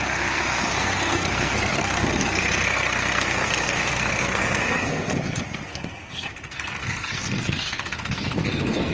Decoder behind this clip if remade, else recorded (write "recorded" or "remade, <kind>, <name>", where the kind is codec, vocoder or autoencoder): remade, codec, SNAC